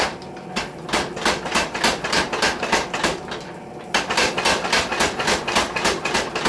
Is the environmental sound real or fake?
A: real